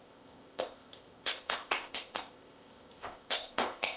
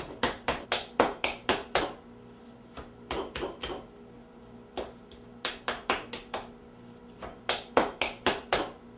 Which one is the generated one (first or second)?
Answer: first